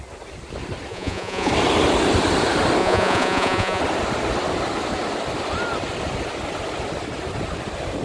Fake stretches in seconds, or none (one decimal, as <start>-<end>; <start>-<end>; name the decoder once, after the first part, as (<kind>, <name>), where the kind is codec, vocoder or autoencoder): 0.9-1.5 (vocoder, Vocos); 2.8-3.8